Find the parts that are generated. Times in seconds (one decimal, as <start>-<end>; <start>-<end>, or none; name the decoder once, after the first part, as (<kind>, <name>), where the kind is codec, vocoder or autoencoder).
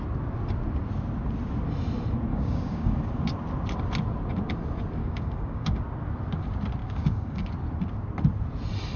2.3-2.9 (codec, DAC); 5.0-5.8; 6.8-7.5